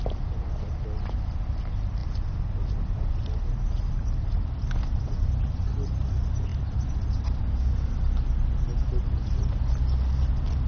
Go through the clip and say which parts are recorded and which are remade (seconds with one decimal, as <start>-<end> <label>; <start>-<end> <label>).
0.0-10.7 recorded

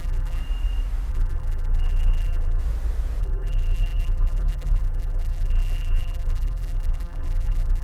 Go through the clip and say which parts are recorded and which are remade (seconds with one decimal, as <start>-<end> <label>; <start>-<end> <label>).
0.0-0.4 remade; 0.4-1.1 recorded; 1.1-2.6 remade; 2.6-3.2 recorded; 3.2-7.8 remade

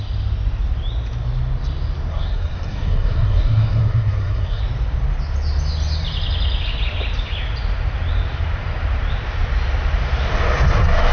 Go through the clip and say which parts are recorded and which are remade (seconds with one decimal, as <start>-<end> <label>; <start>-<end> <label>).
0.0-2.1 recorded; 2.1-4.6 remade; 4.6-11.1 recorded

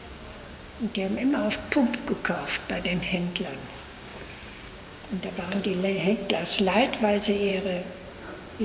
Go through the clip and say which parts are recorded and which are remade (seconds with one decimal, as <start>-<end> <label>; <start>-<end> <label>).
0.0-7.5 remade; 7.5-8.6 recorded